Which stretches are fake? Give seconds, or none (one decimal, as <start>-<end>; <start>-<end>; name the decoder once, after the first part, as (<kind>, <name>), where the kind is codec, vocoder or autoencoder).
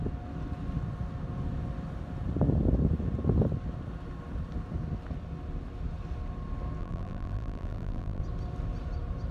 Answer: 6.8-8.2 (vocoder, BigVGAN v2)